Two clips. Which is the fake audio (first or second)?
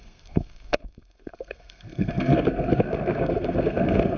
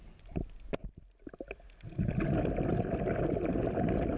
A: first